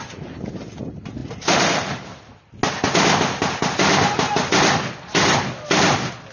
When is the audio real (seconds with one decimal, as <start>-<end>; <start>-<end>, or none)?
0.0-6.3